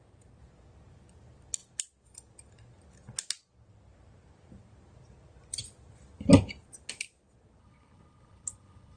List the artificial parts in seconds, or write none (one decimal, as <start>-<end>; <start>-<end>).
7.6-9.0